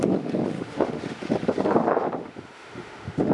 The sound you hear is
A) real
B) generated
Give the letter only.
B